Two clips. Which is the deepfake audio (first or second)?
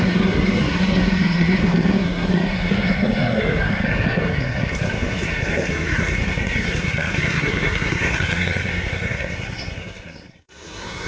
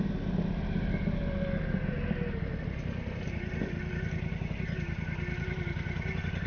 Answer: first